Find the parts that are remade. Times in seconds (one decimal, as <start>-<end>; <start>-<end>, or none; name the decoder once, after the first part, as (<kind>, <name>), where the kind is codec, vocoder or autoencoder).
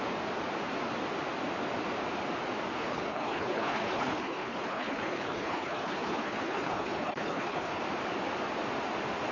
2.8-7.8 (codec, HILCodec)